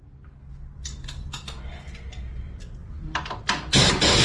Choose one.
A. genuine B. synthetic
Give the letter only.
A